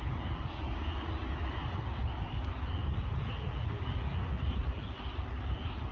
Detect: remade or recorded recorded